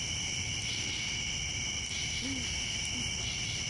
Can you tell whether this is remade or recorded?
recorded